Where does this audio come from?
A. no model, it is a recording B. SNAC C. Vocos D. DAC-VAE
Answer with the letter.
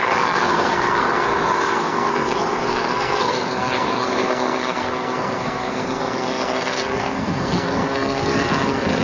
B